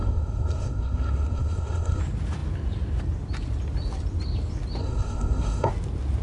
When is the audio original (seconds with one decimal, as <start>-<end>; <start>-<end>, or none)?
2.0-4.8; 5.7-6.2